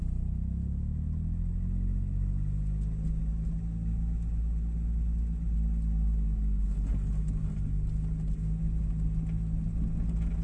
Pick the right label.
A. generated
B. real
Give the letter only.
B